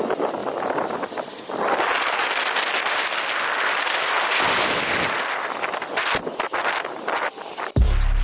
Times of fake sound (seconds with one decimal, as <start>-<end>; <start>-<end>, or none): none